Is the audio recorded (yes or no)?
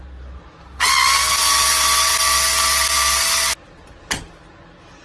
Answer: yes